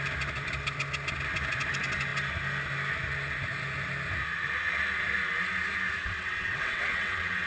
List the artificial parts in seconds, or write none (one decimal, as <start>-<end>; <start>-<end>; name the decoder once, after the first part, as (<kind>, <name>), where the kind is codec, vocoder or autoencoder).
6.0-7.5 (vocoder, WaveNeXt)